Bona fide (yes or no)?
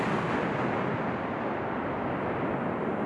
yes